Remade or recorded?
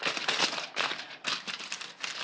recorded